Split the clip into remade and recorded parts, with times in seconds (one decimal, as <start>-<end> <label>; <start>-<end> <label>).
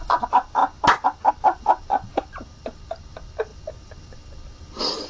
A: 0.0-0.6 remade; 0.6-1.3 recorded; 1.3-5.1 remade